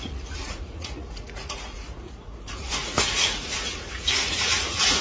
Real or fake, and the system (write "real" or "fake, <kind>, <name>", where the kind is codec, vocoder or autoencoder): fake, vocoder, Vocos